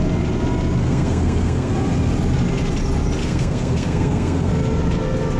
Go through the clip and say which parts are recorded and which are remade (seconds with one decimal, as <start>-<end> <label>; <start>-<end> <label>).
0.0-0.8 recorded; 0.8-1.7 remade; 1.7-3.2 recorded; 3.2-4.5 remade; 4.5-5.4 recorded